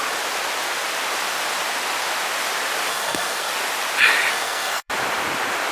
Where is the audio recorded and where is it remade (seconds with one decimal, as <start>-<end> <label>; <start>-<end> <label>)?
0.0-2.9 recorded; 2.9-3.5 remade; 3.5-4.3 recorded; 4.3-4.9 remade; 4.9-5.7 recorded